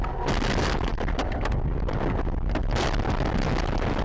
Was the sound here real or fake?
real